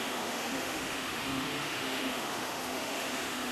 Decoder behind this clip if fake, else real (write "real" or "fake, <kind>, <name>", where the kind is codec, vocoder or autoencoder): fake, autoencoder, DAC-VAE